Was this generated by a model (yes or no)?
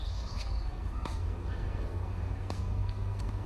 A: yes